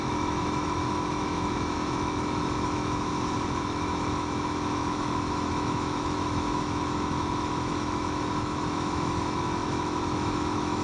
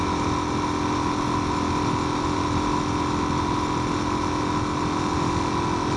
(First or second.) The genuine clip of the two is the second